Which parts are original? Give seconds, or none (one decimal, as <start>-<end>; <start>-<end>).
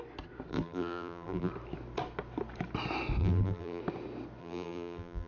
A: 0.0-0.5; 1.5-3.2; 3.8-4.4